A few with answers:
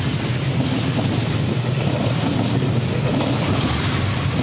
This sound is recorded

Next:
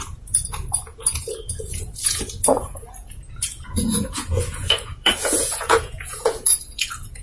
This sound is remade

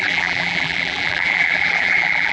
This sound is remade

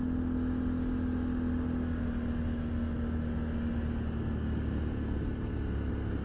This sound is recorded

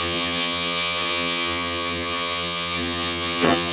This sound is remade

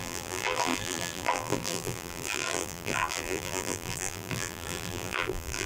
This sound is remade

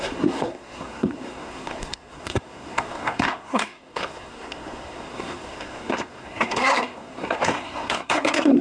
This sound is remade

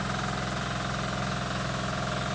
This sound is recorded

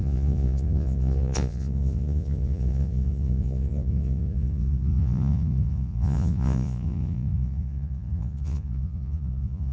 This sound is remade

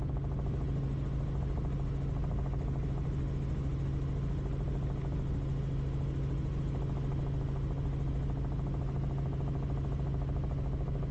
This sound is recorded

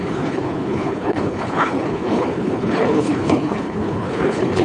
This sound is remade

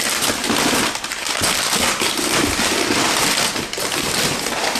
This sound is recorded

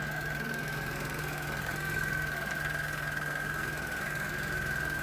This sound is remade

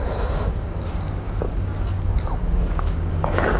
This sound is remade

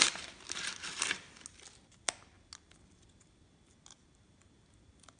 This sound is recorded